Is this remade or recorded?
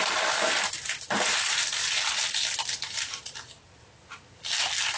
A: recorded